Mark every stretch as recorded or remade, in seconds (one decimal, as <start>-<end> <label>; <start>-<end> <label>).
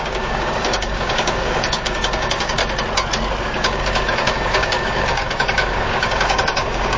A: 0.0-2.6 remade; 2.6-3.4 recorded; 3.4-7.0 remade